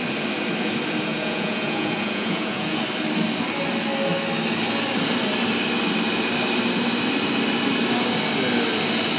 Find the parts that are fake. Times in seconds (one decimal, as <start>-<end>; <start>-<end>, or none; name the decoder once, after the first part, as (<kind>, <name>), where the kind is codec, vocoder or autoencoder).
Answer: 1.1-2.8 (vocoder, Vocos)

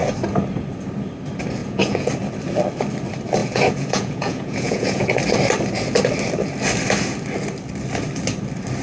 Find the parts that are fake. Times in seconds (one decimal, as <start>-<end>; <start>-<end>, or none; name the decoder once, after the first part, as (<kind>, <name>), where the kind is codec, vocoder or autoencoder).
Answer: 1.6-2.1 (vocoder, Vocos); 3.4-5.2